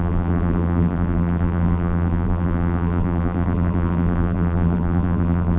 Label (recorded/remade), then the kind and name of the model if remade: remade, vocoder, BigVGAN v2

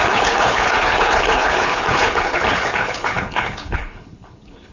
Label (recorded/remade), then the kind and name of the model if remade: remade, codec, HILCodec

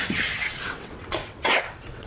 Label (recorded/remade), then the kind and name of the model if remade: remade, vocoder, WaveNeXt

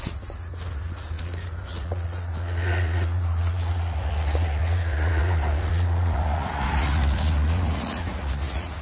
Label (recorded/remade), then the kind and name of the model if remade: remade, vocoder, Vocos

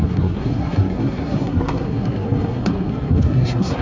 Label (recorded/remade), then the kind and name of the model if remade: remade, codec, SNAC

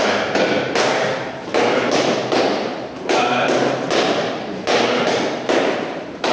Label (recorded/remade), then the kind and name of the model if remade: recorded